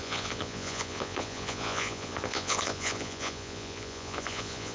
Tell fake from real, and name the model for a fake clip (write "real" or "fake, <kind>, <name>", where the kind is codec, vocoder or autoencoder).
fake, vocoder, Vocos